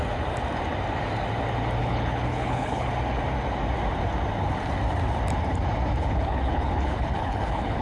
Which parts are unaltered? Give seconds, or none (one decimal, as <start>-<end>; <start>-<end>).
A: 0.0-1.8; 2.9-6.0